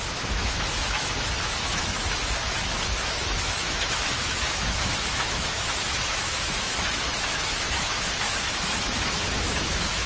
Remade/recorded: remade